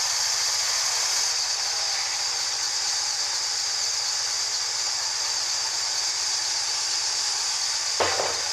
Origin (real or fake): real